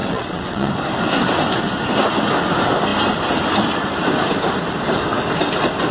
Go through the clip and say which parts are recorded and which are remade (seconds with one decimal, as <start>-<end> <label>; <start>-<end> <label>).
0.0-0.7 remade; 0.7-5.9 recorded